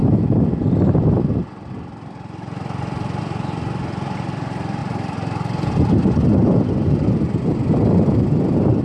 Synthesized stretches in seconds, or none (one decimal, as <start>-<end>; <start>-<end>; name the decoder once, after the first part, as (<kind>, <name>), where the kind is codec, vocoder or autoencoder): 0.0-3.2 (vocoder, BigVGAN v2); 4.8-8.8